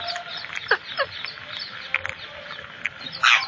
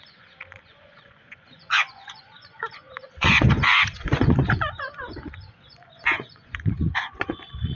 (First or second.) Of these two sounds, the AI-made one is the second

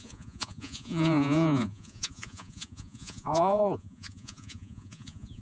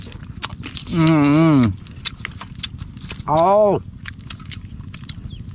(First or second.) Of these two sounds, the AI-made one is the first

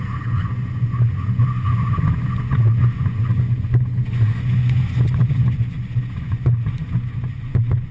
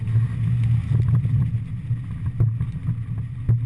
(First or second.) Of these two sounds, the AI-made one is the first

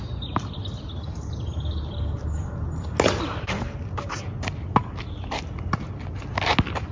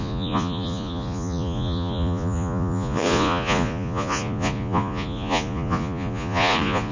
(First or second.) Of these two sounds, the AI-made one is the second